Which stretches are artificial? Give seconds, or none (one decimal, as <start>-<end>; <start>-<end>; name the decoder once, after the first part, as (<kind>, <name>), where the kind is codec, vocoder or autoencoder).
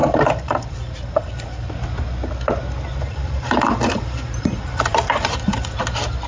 0.0-1.7 (vocoder, BigVGAN v2); 2.9-5.8